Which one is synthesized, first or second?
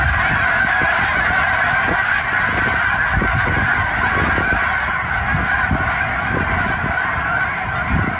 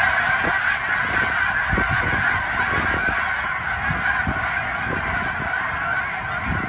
first